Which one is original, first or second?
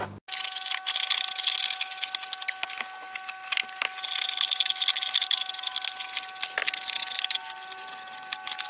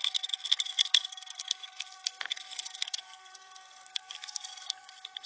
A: first